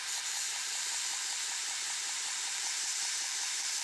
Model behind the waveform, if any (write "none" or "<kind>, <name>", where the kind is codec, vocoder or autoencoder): vocoder, BigVGAN v2